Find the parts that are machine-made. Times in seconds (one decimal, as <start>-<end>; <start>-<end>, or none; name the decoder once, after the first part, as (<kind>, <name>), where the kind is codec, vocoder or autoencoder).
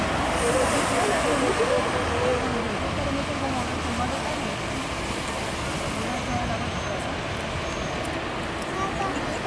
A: none